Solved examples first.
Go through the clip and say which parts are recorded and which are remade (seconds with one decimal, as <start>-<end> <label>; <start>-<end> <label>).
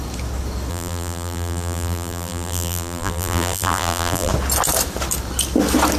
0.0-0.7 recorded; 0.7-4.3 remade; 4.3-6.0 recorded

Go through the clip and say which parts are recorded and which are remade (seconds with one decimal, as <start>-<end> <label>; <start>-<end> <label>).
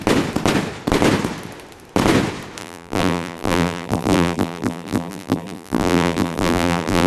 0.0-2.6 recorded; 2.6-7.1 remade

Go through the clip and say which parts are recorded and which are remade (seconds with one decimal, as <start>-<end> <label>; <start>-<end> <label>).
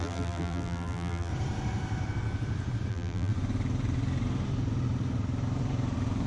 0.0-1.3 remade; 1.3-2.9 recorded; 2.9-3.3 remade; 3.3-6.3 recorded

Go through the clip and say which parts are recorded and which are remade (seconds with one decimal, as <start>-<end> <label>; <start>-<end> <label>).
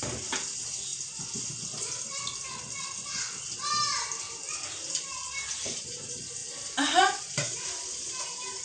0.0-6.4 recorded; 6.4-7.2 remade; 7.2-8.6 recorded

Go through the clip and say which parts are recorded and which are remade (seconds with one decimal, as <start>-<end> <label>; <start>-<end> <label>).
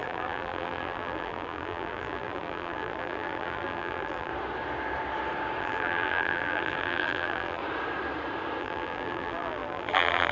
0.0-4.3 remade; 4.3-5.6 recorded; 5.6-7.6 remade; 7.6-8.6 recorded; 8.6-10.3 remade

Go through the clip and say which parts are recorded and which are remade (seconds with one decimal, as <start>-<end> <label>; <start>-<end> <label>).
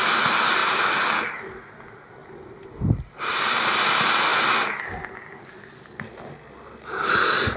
0.0-0.6 recorded; 0.6-1.2 remade; 1.2-2.2 recorded; 2.2-3.6 remade; 3.6-7.6 recorded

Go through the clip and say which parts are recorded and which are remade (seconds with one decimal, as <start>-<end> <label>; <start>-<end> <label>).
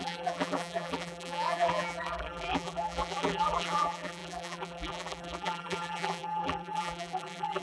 0.0-7.6 remade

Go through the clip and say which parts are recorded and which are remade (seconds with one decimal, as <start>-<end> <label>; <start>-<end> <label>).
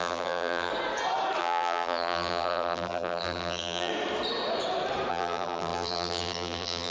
0.0-0.7 remade; 0.7-1.4 recorded; 1.4-3.9 remade; 3.9-5.1 recorded; 5.1-6.9 remade